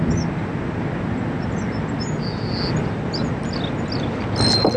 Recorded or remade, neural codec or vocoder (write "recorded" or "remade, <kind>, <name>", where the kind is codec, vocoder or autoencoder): recorded